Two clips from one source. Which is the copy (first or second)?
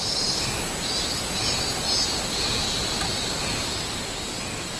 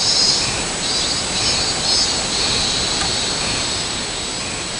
second